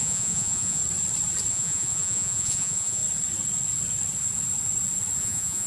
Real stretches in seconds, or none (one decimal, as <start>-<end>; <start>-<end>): 0.8-1.5; 3.0-5.2